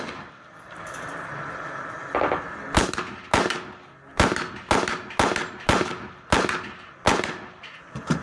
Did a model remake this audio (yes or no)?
no